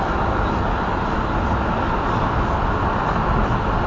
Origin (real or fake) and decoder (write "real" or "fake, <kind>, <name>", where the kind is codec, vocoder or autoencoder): real